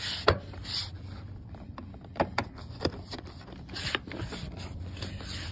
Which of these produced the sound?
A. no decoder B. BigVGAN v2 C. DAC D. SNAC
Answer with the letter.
B